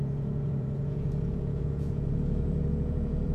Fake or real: fake